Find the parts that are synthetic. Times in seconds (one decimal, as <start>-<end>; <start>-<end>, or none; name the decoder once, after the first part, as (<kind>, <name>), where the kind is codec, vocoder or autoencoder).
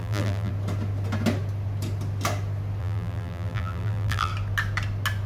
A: 0.0-0.5 (vocoder, BigVGAN v2); 2.8-4.3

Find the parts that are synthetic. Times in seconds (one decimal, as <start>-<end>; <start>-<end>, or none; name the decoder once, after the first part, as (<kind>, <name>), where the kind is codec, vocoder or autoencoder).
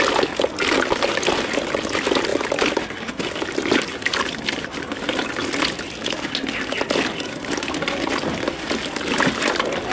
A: none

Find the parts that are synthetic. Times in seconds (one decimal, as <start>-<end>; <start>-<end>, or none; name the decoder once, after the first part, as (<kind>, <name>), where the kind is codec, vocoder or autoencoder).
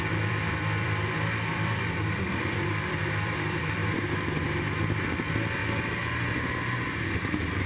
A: 0.0-3.8 (vocoder, BigVGAN v2); 5.0-5.6; 6.3-7.7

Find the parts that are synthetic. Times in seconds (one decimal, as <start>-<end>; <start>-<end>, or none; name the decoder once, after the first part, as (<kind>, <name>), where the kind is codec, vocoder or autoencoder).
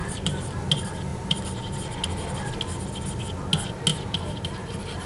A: 0.0-0.6 (vocoder, BigVGAN v2); 1.1-1.6; 3.9-5.1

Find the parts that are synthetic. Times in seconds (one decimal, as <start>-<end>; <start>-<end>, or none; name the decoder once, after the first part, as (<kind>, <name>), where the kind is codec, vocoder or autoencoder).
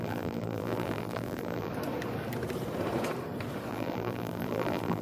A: 0.0-1.7 (vocoder, BigVGAN v2); 3.7-5.0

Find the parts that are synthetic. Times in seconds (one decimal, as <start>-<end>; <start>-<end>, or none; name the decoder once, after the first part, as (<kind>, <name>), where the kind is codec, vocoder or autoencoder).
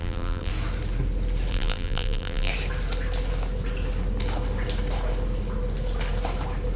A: 0.0-0.5 (vocoder, BigVGAN v2); 1.5-2.5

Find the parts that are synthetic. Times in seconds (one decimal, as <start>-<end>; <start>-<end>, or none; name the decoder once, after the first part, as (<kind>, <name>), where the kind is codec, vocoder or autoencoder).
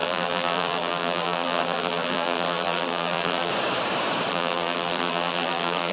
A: 0.0-3.5 (vocoder, BigVGAN v2); 4.3-5.9